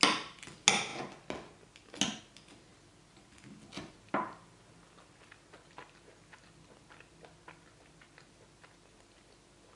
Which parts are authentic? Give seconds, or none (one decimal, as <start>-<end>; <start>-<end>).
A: 0.0-9.8